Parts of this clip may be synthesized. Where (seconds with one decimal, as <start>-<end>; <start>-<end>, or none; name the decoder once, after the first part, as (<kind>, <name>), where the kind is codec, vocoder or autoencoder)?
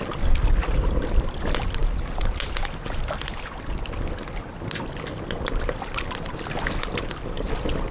none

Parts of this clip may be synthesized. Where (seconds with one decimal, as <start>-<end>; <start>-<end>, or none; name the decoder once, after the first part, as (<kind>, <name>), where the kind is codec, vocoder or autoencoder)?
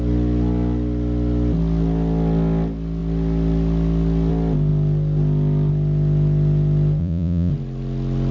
7.0-7.5 (vocoder, Vocos)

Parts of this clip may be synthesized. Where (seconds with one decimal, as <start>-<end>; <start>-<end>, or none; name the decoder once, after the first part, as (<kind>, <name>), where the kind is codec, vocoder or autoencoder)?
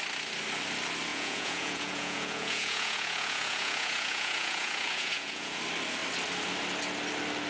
1.1-5.6 (vocoder, Vocos)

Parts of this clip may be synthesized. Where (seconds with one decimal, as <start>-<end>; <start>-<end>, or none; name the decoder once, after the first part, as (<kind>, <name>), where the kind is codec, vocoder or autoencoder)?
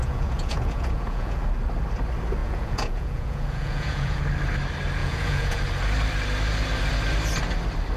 0.0-1.4 (vocoder, Vocos); 2.4-4.2; 5.0-5.6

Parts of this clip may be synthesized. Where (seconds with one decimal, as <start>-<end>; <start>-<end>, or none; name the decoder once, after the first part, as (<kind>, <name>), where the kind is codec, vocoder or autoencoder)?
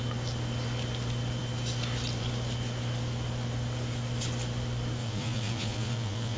5.0-6.4 (vocoder, Vocos)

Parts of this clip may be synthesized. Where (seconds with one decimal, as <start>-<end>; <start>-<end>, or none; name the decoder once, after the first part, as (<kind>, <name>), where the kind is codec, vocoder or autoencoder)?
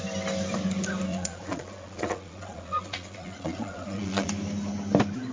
1.1-4.3 (vocoder, Vocos)